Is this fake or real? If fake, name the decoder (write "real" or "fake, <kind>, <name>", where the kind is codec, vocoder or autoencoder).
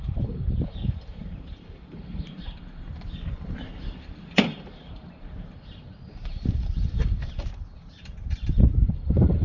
fake, vocoder, BigVGAN v2